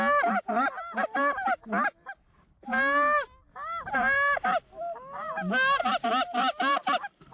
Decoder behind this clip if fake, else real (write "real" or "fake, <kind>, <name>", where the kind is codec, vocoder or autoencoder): real